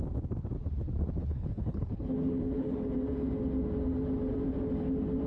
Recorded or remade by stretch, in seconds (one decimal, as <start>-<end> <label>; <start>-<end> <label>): 0.0-1.2 recorded; 1.2-2.9 remade; 2.9-5.3 recorded